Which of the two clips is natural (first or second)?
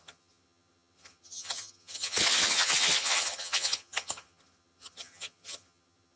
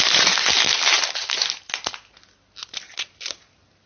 second